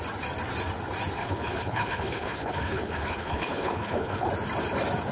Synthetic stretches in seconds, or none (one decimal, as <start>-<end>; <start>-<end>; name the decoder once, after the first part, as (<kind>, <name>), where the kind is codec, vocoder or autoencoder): 1.2-4.3 (codec, HILCodec)